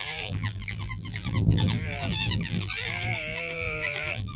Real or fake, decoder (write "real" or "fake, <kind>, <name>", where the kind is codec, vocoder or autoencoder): fake, vocoder, BigVGAN v2